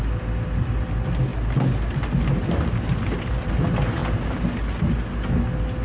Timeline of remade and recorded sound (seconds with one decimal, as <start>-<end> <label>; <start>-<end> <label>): 0.0-5.8 recorded